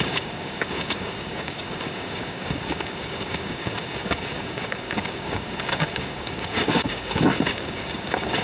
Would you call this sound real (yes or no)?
no